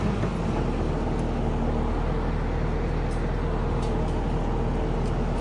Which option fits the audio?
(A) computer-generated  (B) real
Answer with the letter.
B